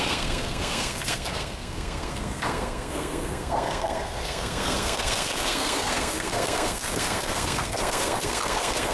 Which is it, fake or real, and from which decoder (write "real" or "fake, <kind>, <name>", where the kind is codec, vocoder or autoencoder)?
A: fake, codec, SNAC